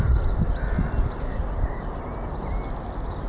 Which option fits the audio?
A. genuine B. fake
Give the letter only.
A